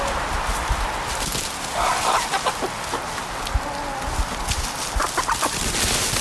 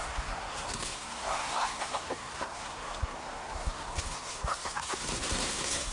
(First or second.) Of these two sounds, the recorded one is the first